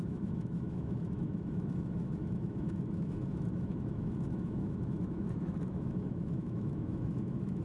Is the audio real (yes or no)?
no